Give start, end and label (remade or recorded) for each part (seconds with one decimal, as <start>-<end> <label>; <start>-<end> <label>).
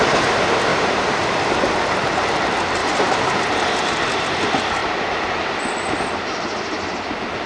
0.0-0.7 recorded; 0.7-2.3 remade; 2.3-2.8 recorded; 2.8-3.4 remade; 3.4-4.8 recorded; 4.8-5.6 remade; 5.6-7.5 recorded